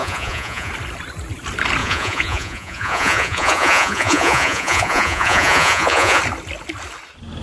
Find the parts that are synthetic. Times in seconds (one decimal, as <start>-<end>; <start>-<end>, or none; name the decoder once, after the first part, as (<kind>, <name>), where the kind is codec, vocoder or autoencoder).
0.0-0.7 (vocoder, Vocos); 1.8-6.2